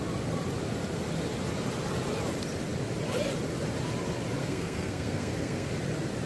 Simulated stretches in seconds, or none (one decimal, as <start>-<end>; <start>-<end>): 4.4-5.7

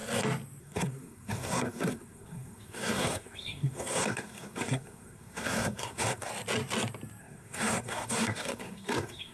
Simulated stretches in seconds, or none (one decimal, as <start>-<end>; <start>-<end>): 0.6-6.3; 7.2-9.3

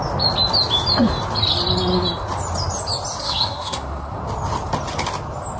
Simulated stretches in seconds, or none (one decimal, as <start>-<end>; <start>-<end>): 3.2-4.2